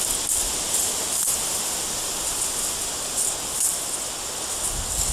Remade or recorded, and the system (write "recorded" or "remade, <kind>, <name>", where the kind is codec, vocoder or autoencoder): recorded